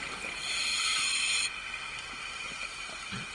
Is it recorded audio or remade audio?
recorded